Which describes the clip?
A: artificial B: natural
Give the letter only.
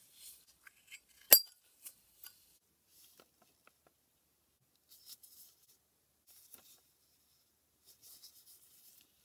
B